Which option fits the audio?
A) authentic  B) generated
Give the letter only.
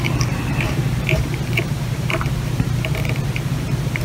B